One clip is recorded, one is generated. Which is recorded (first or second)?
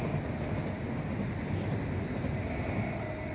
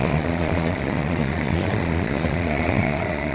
first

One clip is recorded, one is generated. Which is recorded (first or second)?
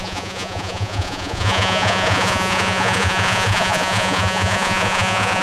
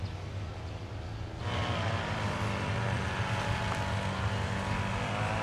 second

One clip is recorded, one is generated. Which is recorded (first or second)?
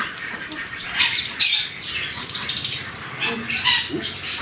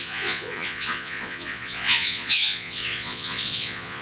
first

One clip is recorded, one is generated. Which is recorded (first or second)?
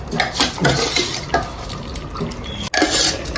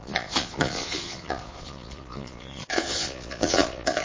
first